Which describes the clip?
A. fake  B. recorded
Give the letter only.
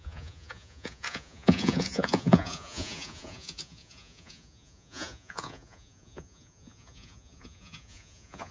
A